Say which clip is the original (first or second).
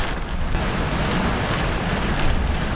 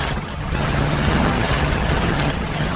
first